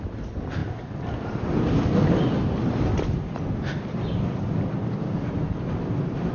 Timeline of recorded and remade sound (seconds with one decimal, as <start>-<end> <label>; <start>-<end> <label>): 0.0-6.3 recorded